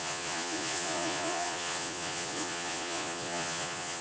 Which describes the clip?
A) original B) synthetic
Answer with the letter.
B